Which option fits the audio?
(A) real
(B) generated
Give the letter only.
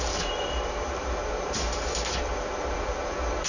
B